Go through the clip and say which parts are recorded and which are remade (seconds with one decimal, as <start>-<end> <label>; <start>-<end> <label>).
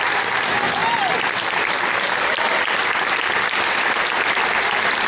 0.0-5.1 recorded